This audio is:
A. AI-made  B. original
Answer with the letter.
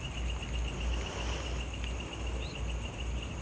B